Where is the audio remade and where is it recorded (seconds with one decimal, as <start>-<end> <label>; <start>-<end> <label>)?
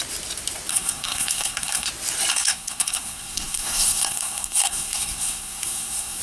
0.0-0.7 recorded; 0.7-1.9 remade; 1.9-2.3 recorded; 2.3-6.2 remade